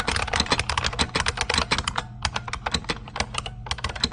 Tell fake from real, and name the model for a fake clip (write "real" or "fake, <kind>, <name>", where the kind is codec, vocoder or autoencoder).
real